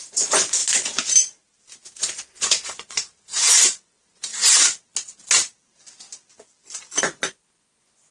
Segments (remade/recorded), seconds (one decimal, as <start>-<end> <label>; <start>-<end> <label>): 0.0-0.6 remade; 0.6-2.0 recorded; 2.0-4.3 remade; 4.3-7.0 recorded; 7.0-8.1 remade